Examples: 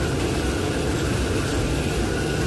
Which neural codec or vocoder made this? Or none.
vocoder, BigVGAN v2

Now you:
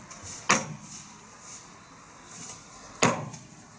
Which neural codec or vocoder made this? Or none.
none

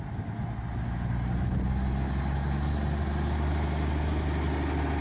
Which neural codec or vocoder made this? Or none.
none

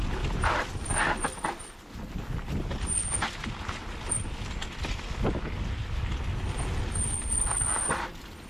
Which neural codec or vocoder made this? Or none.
none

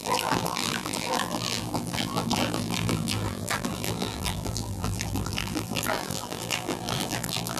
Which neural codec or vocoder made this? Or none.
vocoder, BigVGAN v2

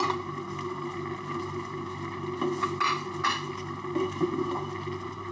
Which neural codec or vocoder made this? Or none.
none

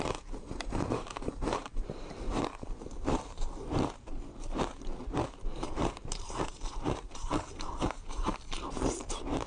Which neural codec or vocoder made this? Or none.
vocoder, BigVGAN v2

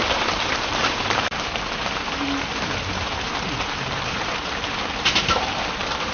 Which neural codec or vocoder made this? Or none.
vocoder, BigVGAN v2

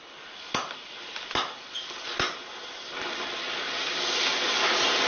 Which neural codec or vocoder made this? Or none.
none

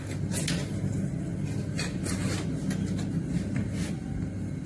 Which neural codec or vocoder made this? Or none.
none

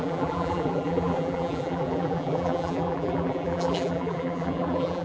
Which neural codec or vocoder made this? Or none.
vocoder, BigVGAN v2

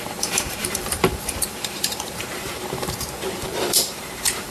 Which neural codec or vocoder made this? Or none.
vocoder, BigVGAN v2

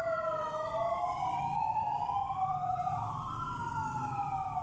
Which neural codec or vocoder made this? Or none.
none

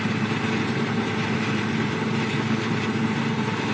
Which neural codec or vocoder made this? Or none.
vocoder, BigVGAN v2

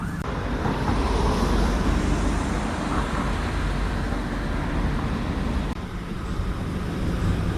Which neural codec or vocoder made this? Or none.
vocoder, BigVGAN v2